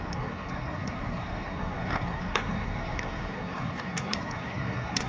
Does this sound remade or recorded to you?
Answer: remade